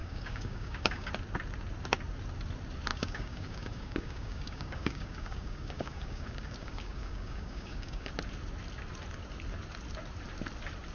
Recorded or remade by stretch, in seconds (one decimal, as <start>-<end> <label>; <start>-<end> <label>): 0.0-1.1 remade; 1.1-2.9 recorded; 2.9-8.1 remade; 8.1-10.9 recorded